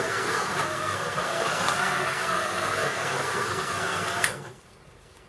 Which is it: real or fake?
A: fake